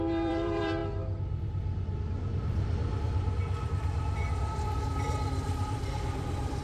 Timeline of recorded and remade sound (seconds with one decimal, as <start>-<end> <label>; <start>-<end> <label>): 0.0-6.6 remade

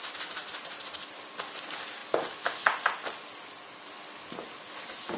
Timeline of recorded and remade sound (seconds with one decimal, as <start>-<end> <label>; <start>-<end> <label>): 0.0-5.2 recorded

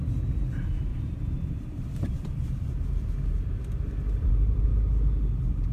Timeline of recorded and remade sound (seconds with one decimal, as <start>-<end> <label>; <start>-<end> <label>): 0.0-4.7 remade; 4.7-5.7 recorded

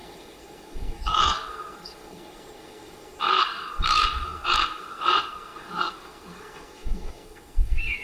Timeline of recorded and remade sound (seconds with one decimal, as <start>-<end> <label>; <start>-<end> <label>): 0.0-8.0 remade